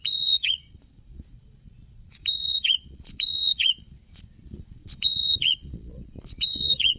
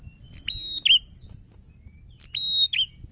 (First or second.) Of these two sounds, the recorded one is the second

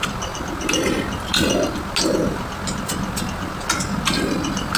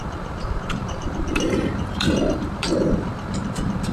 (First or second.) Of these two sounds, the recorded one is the first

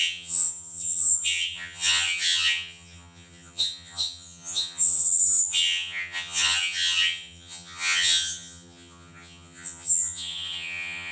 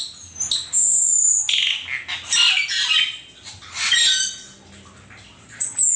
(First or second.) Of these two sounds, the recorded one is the second